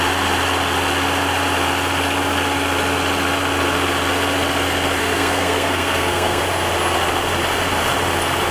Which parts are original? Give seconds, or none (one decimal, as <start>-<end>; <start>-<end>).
0.0-5.0; 6.4-8.5